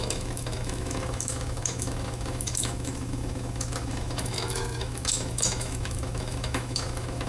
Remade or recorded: remade